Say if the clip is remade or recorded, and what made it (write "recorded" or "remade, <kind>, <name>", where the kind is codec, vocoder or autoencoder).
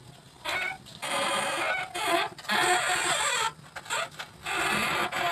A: recorded